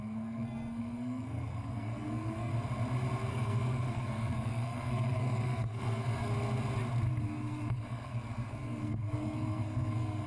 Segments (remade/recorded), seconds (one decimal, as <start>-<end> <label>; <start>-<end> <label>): 0.0-2.5 remade; 2.5-3.3 recorded; 3.3-6.3 remade; 6.3-7.2 recorded; 7.2-10.3 remade